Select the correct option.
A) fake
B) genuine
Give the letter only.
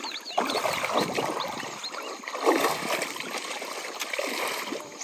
B